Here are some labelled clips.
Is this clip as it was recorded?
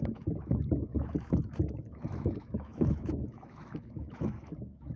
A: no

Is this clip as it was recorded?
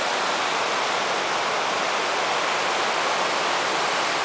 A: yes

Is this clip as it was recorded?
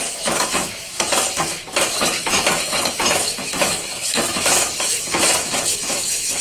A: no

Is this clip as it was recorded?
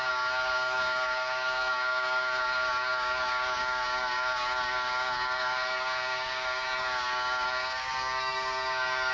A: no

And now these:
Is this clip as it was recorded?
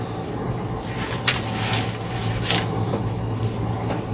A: yes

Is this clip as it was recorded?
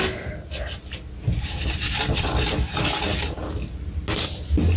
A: yes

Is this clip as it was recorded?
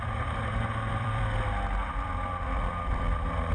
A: no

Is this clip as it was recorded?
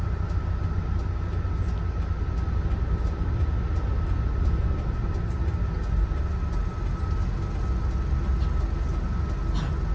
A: yes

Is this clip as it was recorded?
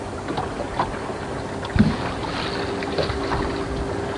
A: yes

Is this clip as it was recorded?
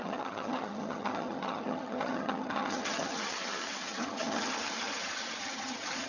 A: no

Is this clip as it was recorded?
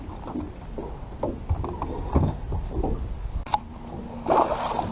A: yes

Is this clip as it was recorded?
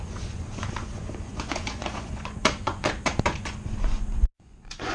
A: no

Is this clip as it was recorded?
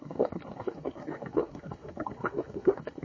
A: no